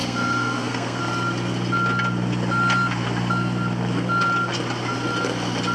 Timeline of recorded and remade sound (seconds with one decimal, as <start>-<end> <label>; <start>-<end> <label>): 0.0-1.0 remade; 1.0-5.7 recorded